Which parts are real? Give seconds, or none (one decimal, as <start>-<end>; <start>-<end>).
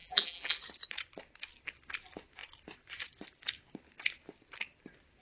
0.6-5.2